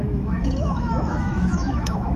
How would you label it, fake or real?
fake